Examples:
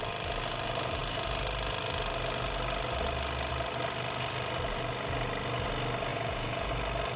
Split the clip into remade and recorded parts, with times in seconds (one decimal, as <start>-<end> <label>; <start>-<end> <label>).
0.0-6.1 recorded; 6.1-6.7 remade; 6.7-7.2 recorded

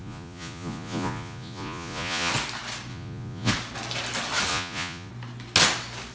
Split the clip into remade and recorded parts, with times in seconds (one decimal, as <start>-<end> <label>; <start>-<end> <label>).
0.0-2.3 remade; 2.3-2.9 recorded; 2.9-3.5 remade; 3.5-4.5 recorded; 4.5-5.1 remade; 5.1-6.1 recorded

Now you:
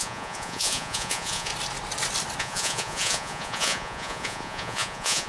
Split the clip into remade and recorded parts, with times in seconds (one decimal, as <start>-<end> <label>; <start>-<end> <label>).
0.0-1.5 remade; 1.5-2.4 recorded; 2.4-5.3 remade

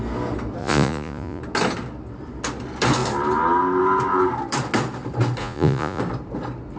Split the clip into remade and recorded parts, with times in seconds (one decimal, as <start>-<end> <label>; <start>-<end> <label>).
0.0-0.6 recorded; 0.6-1.4 remade; 1.4-5.4 recorded; 5.4-6.0 remade; 6.0-6.8 recorded

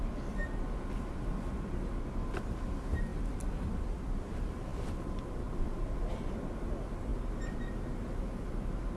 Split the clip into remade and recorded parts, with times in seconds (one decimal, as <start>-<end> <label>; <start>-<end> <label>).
0.0-9.0 recorded

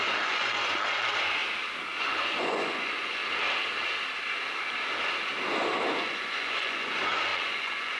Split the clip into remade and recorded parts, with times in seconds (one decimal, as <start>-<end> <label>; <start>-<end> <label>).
0.0-1.4 remade; 1.4-2.0 recorded; 2.0-3.2 remade; 3.2-6.0 recorded; 6.0-8.0 remade